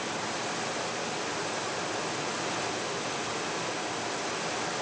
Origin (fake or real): real